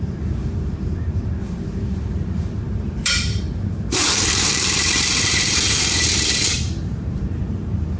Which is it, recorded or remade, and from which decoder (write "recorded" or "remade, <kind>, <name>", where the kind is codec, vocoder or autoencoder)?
remade, vocoder, BigVGAN v2